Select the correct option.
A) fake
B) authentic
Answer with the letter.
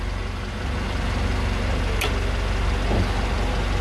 B